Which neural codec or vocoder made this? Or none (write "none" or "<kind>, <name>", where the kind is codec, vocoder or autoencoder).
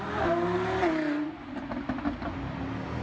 none